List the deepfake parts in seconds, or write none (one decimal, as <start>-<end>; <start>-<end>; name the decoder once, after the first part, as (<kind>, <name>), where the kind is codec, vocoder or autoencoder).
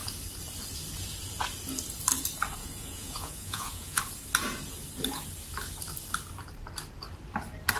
2.6-4.0 (vocoder, Vocos)